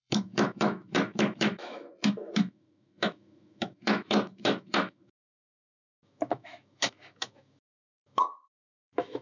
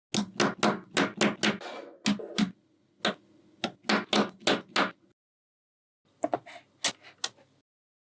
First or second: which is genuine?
second